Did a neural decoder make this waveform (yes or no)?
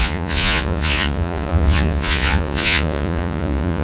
yes